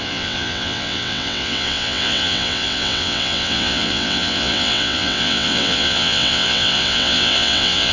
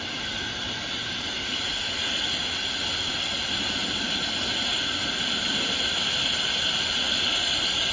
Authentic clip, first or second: second